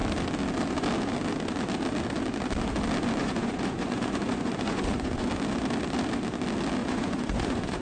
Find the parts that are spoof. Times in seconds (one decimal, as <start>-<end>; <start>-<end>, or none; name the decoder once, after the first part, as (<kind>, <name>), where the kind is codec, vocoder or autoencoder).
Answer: 3.2-5.3 (vocoder, Vocos); 6.8-7.8